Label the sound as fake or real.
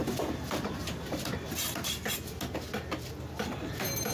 real